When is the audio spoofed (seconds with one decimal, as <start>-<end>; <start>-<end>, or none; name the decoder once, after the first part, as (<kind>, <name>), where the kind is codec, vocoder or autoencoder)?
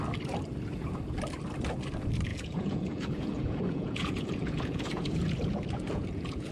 2.3-6.5 (vocoder, Vocos)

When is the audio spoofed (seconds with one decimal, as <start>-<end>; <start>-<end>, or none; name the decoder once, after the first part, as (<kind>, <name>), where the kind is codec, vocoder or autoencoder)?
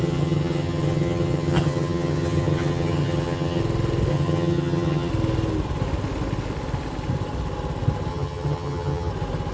0.0-3.6 (vocoder, HiFi-GAN); 4.1-5.1; 8.1-9.1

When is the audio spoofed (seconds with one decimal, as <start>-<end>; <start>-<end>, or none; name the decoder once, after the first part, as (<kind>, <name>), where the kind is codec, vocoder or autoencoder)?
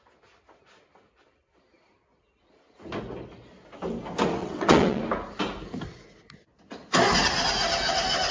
4.4-5.0 (vocoder, WaveNeXt)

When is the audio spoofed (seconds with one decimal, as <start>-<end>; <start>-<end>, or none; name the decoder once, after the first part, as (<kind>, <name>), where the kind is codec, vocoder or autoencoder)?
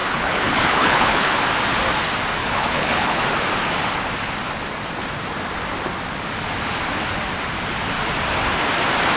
0.0-1.4 (codec, HILCodec); 2.4-3.2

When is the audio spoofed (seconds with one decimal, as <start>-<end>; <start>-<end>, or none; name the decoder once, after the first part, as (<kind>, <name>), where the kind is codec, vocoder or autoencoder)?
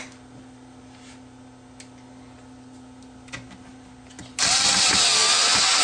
none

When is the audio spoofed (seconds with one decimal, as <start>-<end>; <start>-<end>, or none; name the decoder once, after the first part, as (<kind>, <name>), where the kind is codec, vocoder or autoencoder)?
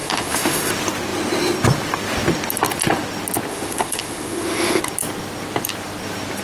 0.0-0.7 (autoencoder, DAC-VAE); 3.5-4.8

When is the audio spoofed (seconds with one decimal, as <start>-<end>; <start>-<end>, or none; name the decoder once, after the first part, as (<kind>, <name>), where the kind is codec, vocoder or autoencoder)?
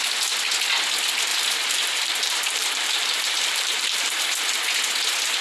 1.3-4.2 (vocoder, BigVGAN v2)